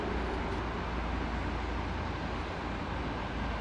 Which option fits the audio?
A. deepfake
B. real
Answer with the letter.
B